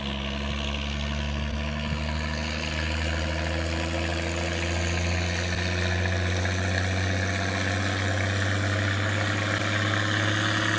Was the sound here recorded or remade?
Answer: recorded